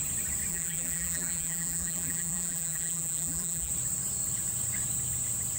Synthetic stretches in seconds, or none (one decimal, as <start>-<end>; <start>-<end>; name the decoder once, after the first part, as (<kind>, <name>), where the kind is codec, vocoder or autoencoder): 0.5-3.7 (vocoder, BigVGAN v2)